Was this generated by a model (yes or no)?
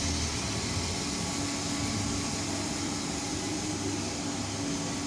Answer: no